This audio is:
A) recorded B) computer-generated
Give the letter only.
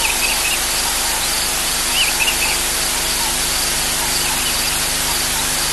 A